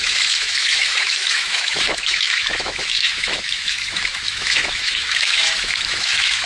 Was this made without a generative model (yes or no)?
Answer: no